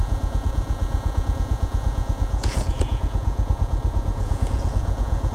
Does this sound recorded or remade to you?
remade